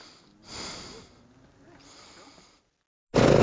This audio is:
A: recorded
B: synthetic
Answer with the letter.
A